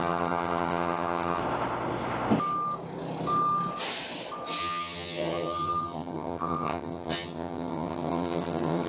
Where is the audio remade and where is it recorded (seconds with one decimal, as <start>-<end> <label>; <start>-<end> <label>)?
0.0-1.4 remade; 1.4-4.6 recorded; 4.6-8.9 remade